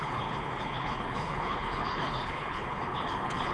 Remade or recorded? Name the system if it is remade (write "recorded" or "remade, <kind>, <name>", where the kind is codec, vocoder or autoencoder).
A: remade, codec, HILCodec